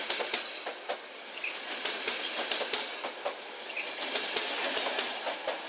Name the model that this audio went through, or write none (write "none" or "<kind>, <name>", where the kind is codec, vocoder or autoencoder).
none